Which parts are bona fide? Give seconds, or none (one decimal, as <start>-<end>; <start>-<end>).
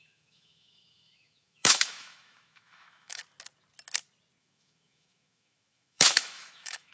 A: 3.2-4.4